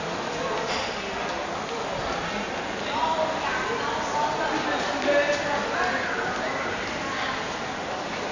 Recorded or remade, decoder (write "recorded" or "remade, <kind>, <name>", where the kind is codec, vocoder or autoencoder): recorded